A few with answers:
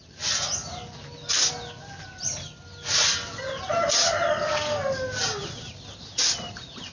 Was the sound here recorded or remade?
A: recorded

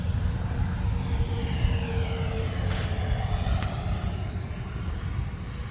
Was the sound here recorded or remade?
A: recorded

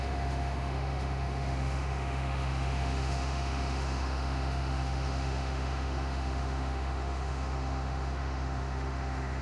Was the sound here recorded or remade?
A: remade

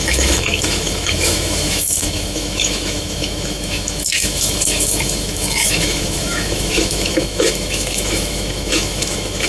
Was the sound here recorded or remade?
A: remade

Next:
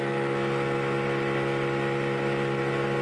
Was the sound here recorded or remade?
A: recorded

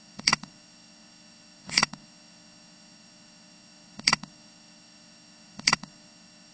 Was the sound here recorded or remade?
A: remade